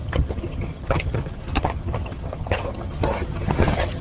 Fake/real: fake